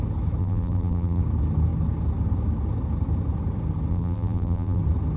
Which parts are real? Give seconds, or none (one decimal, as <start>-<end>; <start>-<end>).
0.0-0.4; 1.2-3.9; 4.8-5.2